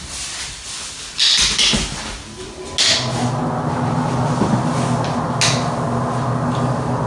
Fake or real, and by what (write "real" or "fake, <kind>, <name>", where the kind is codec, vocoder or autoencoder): real